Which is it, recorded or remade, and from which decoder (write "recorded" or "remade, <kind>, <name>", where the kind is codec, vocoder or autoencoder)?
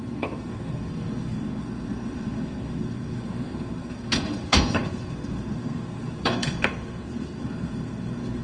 remade, codec, SNAC